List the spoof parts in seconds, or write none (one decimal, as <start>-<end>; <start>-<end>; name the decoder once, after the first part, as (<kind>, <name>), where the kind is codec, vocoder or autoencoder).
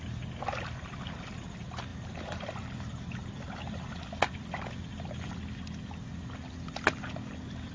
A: 1.9-2.5 (vocoder, BigVGAN v2)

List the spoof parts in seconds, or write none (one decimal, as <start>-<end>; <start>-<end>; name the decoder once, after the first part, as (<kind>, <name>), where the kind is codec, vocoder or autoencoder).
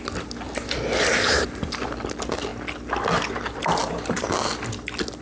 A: 3.8-4.7 (vocoder, BigVGAN v2)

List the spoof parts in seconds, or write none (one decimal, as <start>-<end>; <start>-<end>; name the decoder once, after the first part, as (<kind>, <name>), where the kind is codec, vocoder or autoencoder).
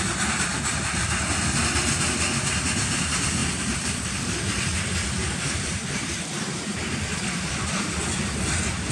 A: 3.4-4.2 (vocoder, BigVGAN v2); 4.7-8.2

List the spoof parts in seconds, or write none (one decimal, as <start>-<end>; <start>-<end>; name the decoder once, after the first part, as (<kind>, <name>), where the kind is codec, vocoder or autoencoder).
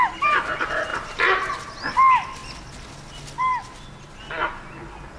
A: 0.9-1.7 (vocoder, BigVGAN v2)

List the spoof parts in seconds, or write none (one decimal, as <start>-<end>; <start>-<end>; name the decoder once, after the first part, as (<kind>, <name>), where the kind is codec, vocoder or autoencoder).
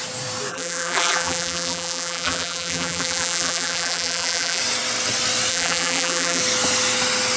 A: 0.5-4.6 (vocoder, BigVGAN v2); 5.5-6.4